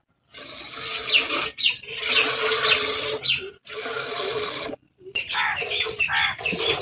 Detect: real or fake real